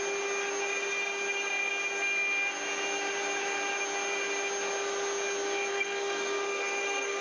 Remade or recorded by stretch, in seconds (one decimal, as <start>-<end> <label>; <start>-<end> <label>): 0.0-5.7 recorded; 5.7-7.2 remade